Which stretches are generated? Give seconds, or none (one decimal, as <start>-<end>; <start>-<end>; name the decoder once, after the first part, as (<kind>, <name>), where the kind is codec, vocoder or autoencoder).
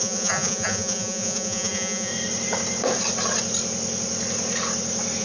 0.0-2.1 (vocoder, Vocos)